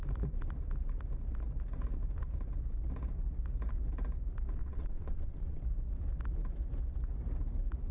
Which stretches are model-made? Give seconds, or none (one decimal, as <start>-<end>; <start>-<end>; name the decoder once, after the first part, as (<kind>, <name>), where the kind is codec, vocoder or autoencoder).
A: 4.6-5.6 (vocoder, WaveNeXt)

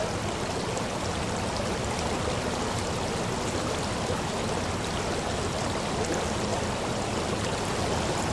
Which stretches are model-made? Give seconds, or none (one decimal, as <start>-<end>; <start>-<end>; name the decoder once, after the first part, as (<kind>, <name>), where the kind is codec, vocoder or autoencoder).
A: none

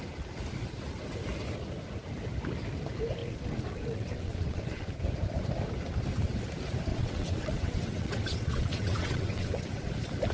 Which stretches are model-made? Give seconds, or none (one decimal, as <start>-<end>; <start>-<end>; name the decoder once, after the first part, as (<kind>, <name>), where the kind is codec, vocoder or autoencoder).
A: 3.2-4.9 (vocoder, WaveNeXt); 6.9-9.9

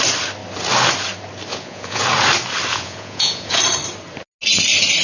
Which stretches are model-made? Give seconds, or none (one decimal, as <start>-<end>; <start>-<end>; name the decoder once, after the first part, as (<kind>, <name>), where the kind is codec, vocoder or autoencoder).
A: 1.5-2.0 (vocoder, Vocos); 2.7-3.6